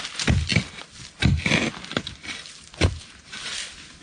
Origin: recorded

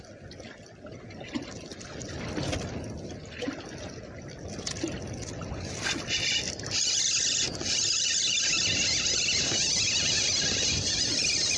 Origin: recorded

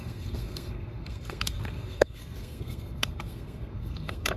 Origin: remade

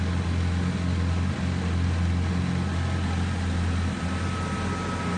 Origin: recorded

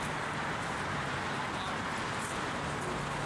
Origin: recorded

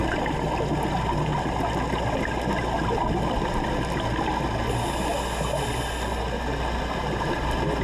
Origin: recorded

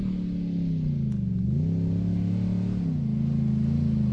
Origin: recorded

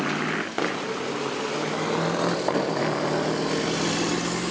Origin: recorded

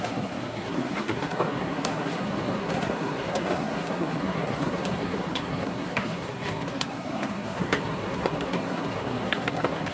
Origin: remade